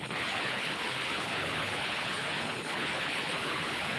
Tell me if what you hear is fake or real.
fake